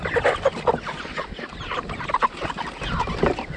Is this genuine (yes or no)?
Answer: yes